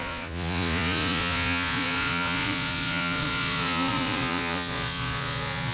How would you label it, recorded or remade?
remade